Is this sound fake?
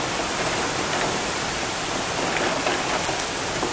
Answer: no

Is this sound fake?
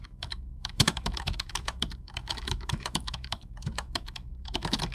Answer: yes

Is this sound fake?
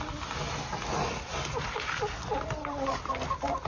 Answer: no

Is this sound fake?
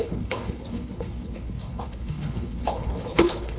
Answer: yes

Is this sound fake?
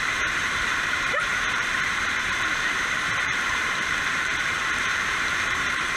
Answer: yes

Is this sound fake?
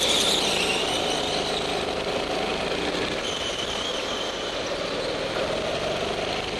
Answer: no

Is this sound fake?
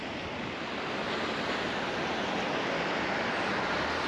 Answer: no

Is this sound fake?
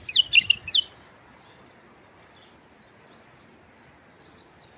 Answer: no